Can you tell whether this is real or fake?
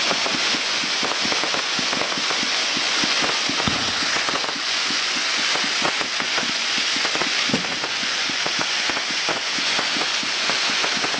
fake